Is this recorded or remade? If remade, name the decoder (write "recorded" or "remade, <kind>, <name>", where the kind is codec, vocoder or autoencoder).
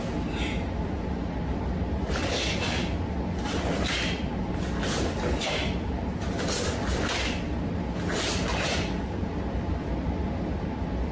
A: recorded